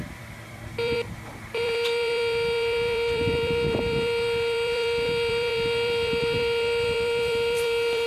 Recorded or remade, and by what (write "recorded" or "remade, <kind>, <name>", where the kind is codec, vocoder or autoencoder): remade, vocoder, BigVGAN v2